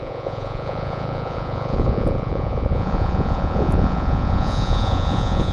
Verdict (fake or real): fake